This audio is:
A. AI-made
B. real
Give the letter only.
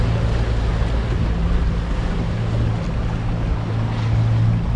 B